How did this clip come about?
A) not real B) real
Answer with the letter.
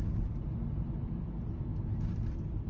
B